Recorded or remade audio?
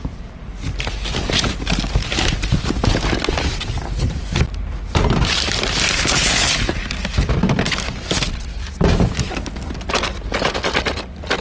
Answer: recorded